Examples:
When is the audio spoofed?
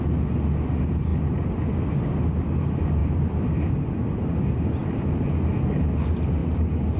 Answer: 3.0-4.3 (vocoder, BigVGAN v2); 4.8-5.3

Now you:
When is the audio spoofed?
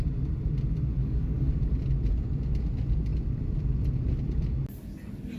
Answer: 1.0-1.5 (codec, DAC)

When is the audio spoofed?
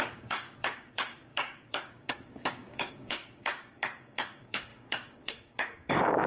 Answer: 0.0-6.3 (codec, DAC)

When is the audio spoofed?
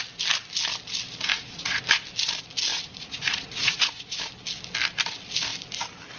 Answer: 1.3-1.8 (vocoder, Vocos); 2.7-4.2